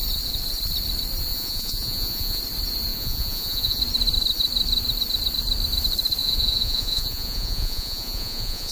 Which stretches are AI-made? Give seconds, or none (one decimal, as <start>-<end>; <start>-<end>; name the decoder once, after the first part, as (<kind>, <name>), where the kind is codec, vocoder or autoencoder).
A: 1.3-2.4 (vocoder, Vocos); 2.9-3.8; 6.2-8.7

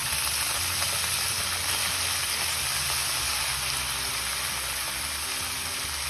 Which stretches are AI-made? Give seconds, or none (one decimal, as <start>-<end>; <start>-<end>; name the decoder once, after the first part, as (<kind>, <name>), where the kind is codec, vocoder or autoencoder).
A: 0.0-1.4 (vocoder, BigVGAN v2); 3.3-4.5

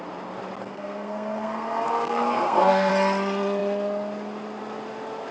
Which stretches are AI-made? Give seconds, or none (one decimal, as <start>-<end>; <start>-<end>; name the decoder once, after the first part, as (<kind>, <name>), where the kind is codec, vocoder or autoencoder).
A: 0.6-2.9 (codec, SNAC)

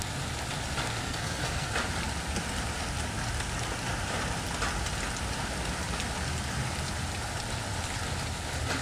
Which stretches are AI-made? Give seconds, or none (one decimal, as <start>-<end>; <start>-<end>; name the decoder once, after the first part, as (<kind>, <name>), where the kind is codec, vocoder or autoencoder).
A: 1.0-1.7 (codec, SNAC)

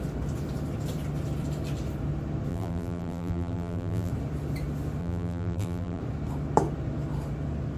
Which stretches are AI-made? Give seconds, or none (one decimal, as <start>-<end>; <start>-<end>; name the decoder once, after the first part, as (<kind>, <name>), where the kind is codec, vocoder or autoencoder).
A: 2.5-4.1 (vocoder, BigVGAN v2); 5.0-6.0

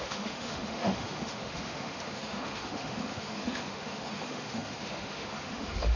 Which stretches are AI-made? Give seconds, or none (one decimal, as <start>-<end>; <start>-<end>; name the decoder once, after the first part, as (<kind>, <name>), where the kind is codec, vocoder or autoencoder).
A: 0.0-6.0 (autoencoder, DAC-VAE)